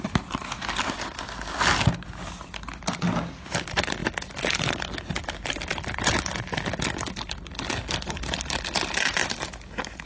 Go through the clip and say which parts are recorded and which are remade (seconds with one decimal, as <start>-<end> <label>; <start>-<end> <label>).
0.0-10.1 recorded